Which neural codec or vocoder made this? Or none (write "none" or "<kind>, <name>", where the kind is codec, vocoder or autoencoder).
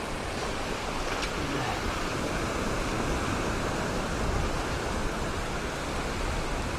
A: vocoder, BigVGAN v2